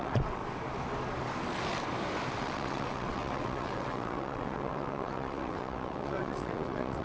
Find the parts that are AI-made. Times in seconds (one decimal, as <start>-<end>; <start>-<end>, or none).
0.0-0.4; 2.3-7.0